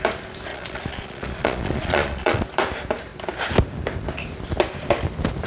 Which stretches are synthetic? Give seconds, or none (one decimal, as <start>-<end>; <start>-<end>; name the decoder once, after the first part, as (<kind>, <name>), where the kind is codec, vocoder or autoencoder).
0.5-2.4 (vocoder, Vocos)